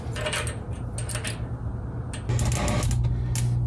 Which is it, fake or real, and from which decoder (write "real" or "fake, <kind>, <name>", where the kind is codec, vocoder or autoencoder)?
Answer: real